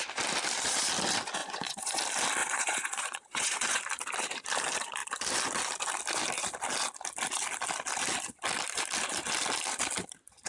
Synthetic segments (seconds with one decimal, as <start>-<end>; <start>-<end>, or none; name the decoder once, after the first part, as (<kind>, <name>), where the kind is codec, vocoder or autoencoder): 1.4-2.0 (vocoder, Vocos); 2.4-3.8